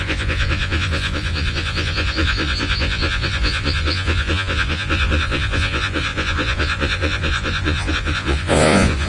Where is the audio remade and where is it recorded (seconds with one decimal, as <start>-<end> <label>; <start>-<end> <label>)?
0.0-9.1 remade